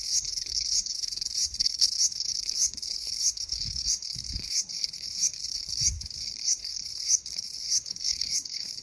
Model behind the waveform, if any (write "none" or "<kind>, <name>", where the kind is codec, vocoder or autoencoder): codec, HILCodec